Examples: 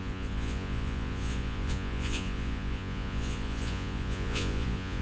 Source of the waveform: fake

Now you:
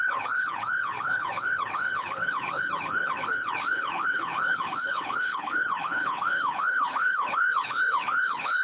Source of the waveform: fake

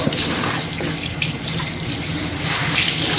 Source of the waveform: real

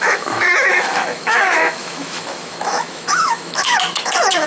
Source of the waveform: fake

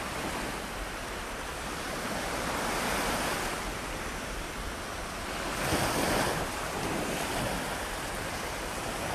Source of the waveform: real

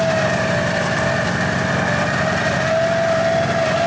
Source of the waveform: real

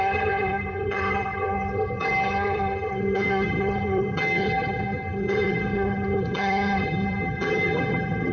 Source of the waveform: fake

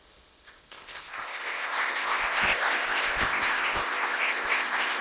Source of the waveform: fake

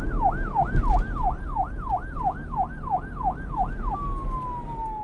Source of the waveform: real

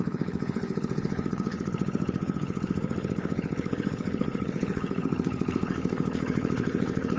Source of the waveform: fake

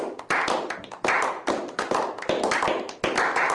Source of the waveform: real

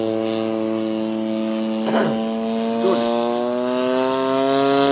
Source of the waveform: real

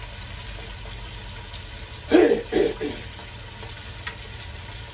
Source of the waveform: real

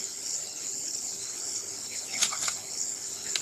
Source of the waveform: fake